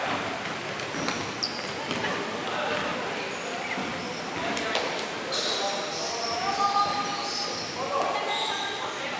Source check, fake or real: real